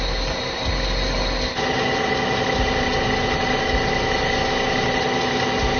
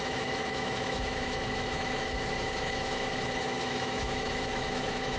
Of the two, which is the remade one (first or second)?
second